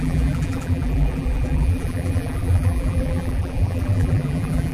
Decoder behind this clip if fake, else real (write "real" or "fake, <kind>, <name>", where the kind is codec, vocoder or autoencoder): fake, vocoder, BigVGAN v2